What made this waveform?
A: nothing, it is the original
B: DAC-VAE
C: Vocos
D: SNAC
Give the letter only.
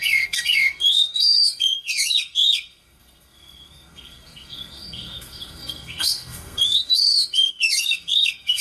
D